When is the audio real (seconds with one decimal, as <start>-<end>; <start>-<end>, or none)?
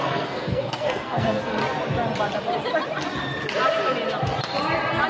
1.6-5.1